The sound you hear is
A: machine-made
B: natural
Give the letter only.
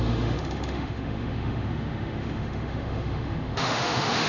A